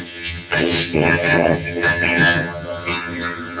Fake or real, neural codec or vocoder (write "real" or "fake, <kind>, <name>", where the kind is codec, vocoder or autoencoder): fake, vocoder, HiFi-GAN